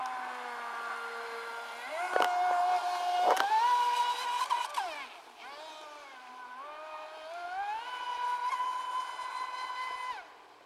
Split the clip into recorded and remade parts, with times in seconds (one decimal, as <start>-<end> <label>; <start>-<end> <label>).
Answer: 0.0-10.7 recorded